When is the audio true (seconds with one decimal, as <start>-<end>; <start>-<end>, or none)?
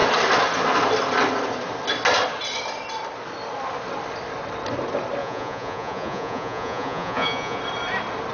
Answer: 0.0-5.2; 7.6-8.3